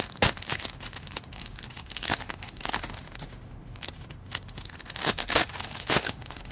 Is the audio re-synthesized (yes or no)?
yes